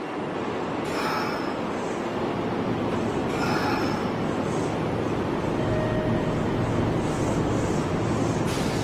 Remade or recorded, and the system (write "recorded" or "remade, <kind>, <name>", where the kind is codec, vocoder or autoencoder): recorded